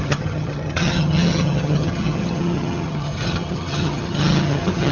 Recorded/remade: remade